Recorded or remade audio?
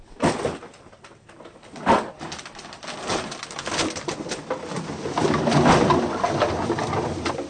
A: recorded